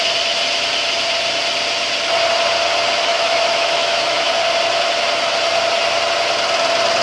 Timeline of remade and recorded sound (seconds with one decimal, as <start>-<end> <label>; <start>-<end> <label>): 0.0-3.1 recorded; 3.1-4.3 remade; 4.3-7.0 recorded